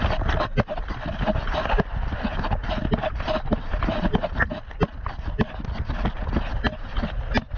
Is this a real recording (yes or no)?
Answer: yes